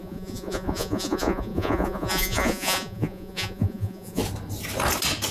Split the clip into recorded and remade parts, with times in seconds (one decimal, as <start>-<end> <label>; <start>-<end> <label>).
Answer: 0.0-4.2 remade; 4.2-5.3 recorded